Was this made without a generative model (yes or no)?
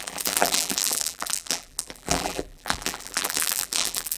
no